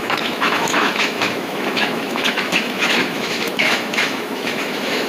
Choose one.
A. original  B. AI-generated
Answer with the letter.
B